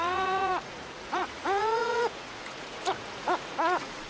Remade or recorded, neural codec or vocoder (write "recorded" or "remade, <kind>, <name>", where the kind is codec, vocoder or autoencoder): remade, vocoder, Vocos